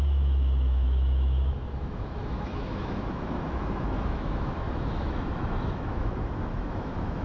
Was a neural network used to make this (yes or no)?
yes